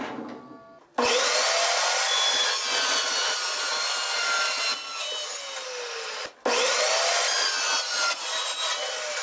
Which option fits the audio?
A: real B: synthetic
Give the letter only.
A